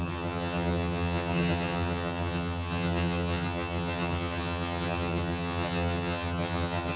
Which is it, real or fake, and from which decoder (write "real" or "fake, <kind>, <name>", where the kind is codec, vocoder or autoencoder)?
fake, vocoder, HiFi-GAN